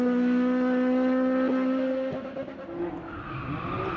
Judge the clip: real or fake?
real